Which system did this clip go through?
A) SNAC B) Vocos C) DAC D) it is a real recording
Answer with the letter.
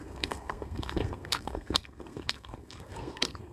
A